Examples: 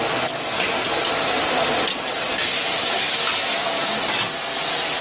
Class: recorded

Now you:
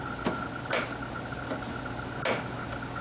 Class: recorded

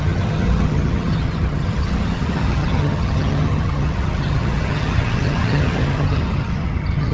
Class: remade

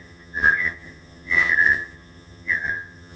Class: remade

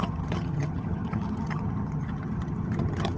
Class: remade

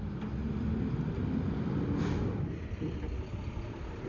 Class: recorded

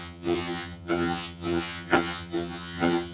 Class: remade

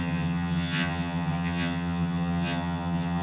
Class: remade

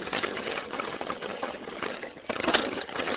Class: remade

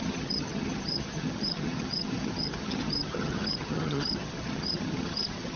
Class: remade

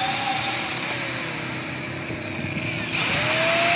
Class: recorded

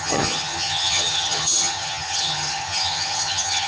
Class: remade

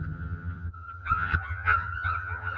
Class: remade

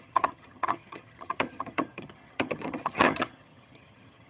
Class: remade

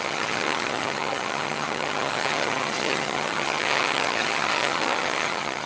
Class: remade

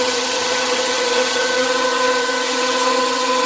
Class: remade